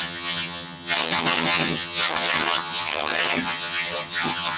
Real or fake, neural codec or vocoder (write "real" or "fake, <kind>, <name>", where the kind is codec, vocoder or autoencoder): fake, vocoder, HiFi-GAN